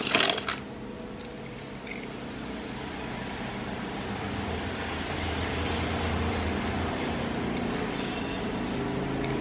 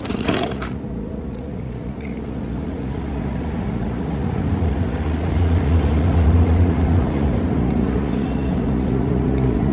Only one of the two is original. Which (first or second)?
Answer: first